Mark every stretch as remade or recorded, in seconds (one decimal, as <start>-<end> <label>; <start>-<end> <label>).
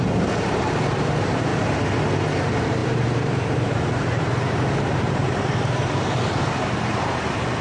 0.0-1.5 remade; 1.5-2.4 recorded; 2.4-7.6 remade